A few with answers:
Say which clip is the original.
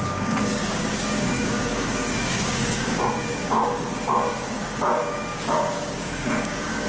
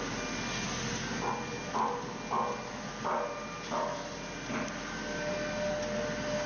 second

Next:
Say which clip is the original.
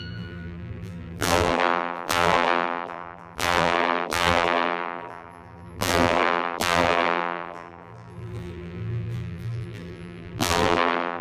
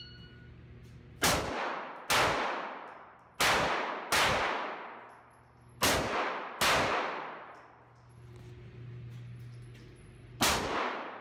second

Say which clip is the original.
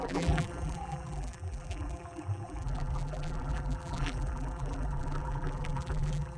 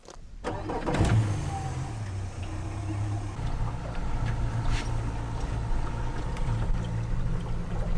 second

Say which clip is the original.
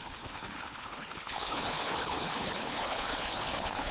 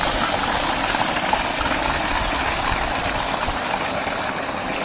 second